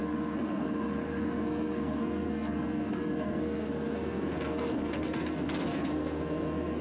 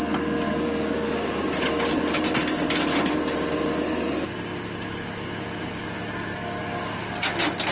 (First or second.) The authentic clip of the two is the second